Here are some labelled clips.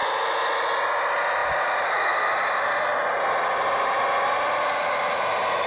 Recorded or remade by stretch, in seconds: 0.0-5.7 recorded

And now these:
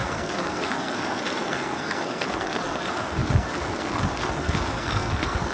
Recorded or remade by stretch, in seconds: 0.0-5.5 remade

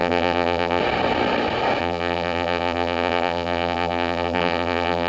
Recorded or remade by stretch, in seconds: 0.0-0.8 remade; 0.8-1.8 recorded; 1.8-5.1 remade